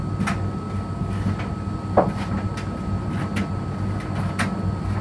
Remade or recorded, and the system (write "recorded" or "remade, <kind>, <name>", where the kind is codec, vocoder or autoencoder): recorded